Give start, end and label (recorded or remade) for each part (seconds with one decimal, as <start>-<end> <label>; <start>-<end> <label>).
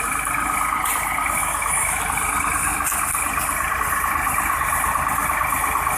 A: 0.0-1.4 recorded; 1.4-2.0 remade; 2.0-6.0 recorded